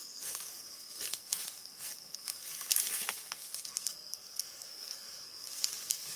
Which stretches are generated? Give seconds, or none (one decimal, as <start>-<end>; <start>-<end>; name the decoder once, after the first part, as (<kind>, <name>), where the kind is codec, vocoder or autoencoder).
0.0-6.2 (codec, SNAC)